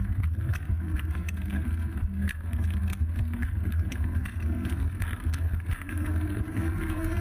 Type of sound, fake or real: fake